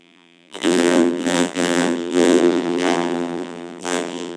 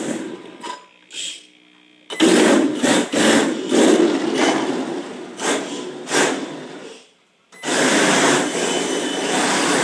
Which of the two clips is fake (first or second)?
first